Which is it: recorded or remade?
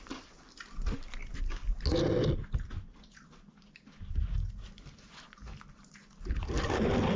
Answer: recorded